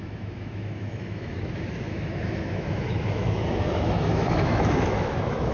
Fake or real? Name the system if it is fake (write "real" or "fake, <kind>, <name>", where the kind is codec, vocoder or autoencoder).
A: fake, autoencoder, DAC-VAE